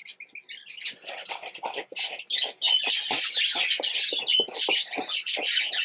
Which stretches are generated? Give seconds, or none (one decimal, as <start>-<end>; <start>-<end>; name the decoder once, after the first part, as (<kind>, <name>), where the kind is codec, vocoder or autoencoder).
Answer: none